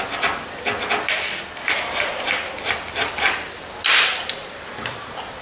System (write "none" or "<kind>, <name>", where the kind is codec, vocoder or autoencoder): none